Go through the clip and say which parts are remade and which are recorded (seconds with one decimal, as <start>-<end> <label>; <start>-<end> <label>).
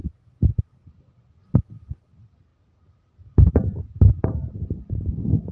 0.0-1.4 recorded; 1.4-2.0 remade; 2.0-2.5 recorded; 2.5-4.5 remade; 4.5-5.5 recorded